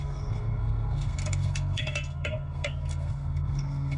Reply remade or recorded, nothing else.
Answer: remade